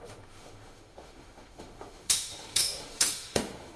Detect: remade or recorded remade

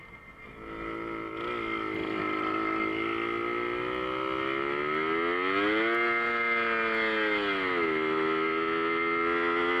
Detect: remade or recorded recorded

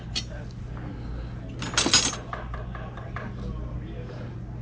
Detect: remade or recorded recorded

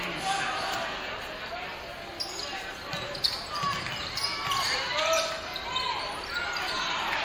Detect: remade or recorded recorded